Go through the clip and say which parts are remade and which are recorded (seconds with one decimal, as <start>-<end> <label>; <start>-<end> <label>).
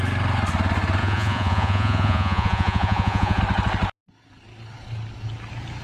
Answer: 0.0-1.0 recorded; 1.0-3.4 remade; 3.4-5.8 recorded